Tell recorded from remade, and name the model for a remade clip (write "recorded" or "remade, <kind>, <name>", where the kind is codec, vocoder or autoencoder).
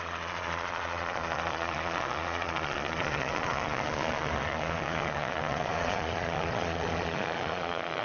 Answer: remade, vocoder, Vocos